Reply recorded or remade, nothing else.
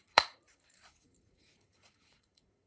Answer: remade